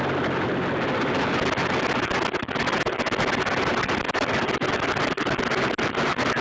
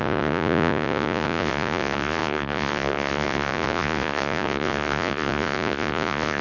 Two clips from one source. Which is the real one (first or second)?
first